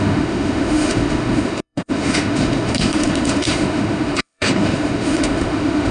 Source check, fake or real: fake